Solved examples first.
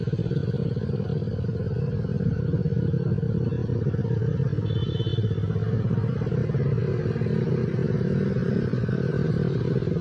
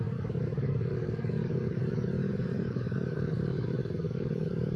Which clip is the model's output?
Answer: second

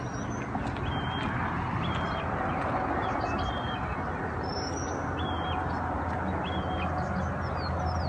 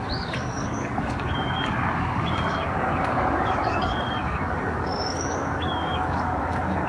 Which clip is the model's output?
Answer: second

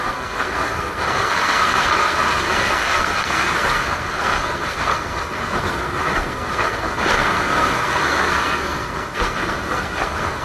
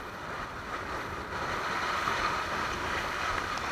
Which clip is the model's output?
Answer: first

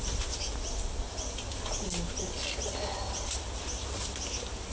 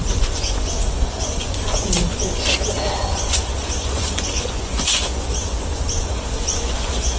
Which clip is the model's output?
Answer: second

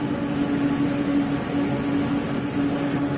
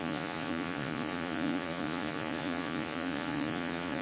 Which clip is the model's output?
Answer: second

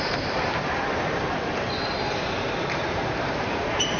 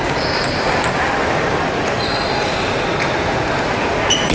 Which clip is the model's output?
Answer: first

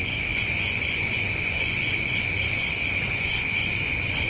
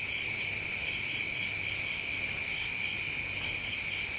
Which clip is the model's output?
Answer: first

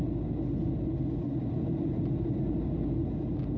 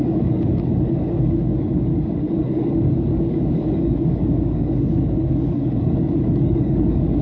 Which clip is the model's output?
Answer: second